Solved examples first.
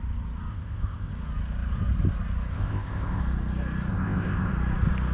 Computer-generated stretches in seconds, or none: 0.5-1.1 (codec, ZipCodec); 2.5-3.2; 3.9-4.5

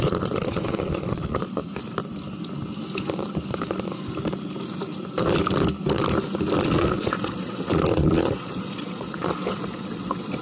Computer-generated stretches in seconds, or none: 0.0-1.7 (vocoder, Vocos); 6.7-10.4

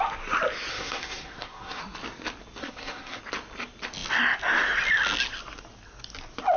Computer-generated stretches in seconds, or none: 0.7-1.8 (codec, SNAC); 2.6-3.2

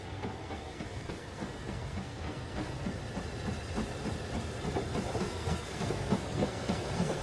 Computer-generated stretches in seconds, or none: 0.0-3.0 (codec, SNAC); 5.2-7.2

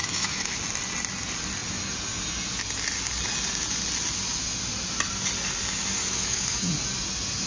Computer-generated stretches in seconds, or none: 0.0-0.6 (autoencoder, DAC-VAE); 6.0-6.7